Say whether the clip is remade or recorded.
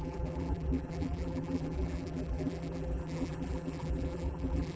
remade